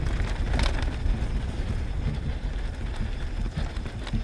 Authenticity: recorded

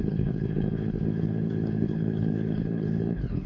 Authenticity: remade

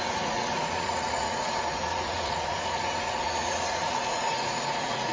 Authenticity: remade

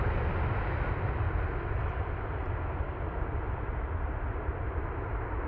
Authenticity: recorded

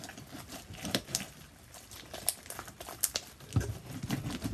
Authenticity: recorded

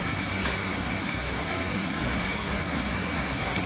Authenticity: remade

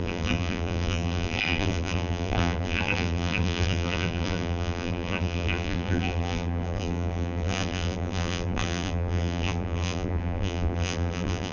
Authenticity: remade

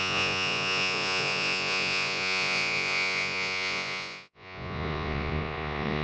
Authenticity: remade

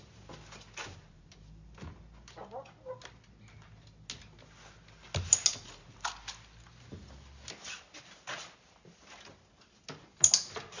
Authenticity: recorded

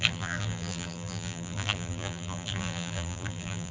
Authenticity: remade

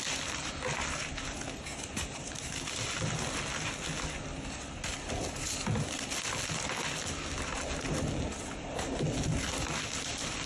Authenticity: recorded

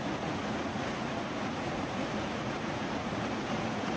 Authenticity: remade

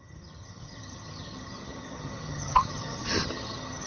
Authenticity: remade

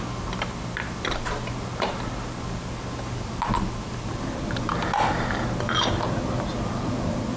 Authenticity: recorded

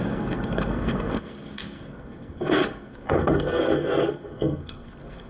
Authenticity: remade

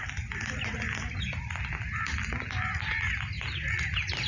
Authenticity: recorded